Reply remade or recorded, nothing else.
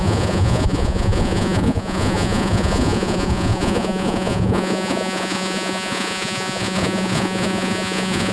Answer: remade